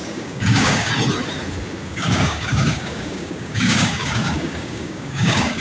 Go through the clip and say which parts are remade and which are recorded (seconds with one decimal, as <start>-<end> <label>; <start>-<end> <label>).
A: 0.0-0.9 remade; 0.9-1.9 recorded; 1.9-5.6 remade